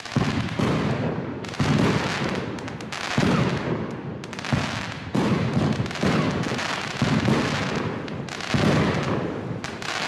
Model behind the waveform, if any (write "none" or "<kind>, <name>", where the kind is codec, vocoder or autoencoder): none